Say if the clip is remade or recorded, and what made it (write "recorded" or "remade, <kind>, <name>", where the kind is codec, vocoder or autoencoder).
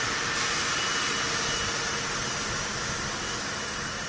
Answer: recorded